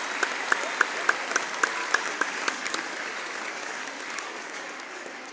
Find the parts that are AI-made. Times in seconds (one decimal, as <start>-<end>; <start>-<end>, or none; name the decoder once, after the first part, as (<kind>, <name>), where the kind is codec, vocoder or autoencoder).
1.8-5.3 (codec, DAC)

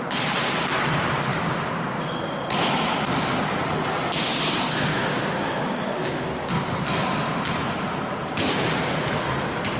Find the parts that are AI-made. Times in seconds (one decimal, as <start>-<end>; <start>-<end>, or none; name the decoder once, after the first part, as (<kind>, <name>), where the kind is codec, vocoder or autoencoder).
1.3-2.2 (codec, DAC); 4.3-6.3

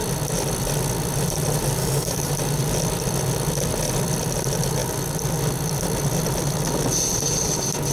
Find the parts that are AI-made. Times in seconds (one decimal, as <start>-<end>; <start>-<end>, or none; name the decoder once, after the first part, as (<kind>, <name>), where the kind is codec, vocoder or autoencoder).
1.8-2.3 (codec, DAC)

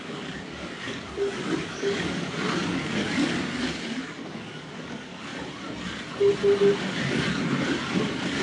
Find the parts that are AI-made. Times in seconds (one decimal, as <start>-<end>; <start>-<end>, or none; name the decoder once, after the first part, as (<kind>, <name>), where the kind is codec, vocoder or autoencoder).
0.0-5.3 (codec, DAC)

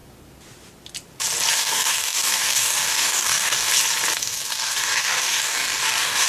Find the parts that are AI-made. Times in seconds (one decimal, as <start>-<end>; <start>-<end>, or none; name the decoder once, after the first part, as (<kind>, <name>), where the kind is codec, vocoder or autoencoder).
1.5-3.7 (codec, DAC); 4.2-6.3

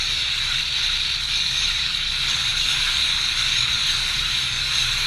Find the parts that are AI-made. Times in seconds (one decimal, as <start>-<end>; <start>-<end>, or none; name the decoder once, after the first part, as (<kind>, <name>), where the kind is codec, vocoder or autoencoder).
0.0-0.6 (codec, DAC); 1.2-5.1

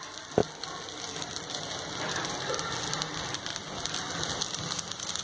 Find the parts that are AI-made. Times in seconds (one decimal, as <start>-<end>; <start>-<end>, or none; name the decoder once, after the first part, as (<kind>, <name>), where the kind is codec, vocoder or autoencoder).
none

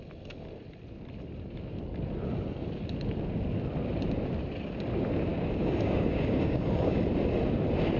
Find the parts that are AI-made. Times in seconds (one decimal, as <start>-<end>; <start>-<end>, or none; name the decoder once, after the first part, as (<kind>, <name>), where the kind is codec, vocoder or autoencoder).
5.3-7.0 (codec, DAC)